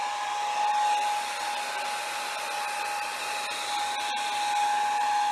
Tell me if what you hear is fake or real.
real